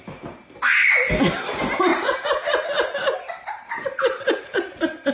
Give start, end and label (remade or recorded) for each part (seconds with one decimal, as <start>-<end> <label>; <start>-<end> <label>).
0.0-1.9 recorded; 1.9-5.1 remade